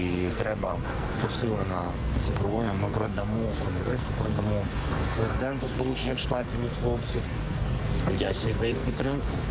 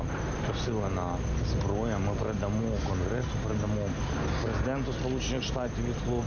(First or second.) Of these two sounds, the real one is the second